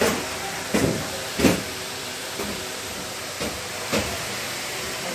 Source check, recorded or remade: remade